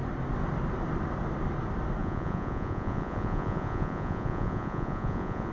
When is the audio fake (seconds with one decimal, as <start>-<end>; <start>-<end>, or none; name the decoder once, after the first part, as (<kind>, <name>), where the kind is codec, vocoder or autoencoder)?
2.0-5.5 (vocoder, Vocos)